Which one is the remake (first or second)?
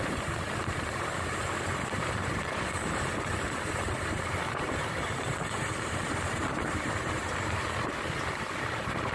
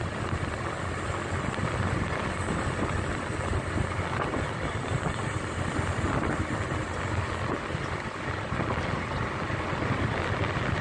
first